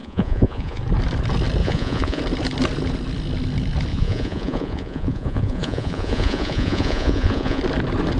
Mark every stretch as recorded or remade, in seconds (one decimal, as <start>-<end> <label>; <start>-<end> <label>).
0.0-0.8 remade; 0.8-1.6 recorded; 1.6-2.2 remade; 2.2-3.9 recorded; 3.9-7.6 remade; 7.6-8.2 recorded